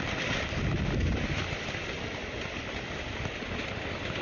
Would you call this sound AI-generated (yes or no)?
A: no